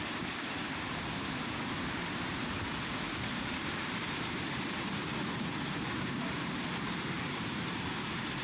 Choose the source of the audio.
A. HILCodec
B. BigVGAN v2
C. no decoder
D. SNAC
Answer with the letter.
B